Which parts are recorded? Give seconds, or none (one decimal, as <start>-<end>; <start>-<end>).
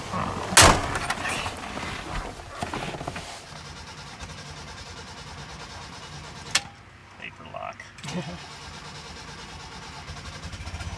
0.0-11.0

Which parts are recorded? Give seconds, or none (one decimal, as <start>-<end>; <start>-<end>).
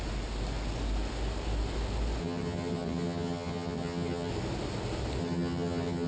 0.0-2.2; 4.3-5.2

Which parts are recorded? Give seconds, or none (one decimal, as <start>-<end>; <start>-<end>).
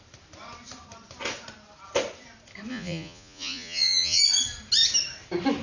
0.0-2.7; 4.2-5.6